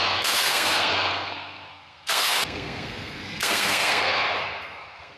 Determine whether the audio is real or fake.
fake